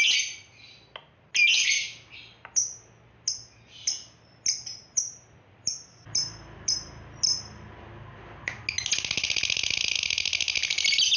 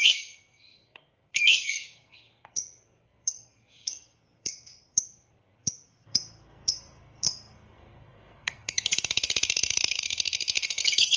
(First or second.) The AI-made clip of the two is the second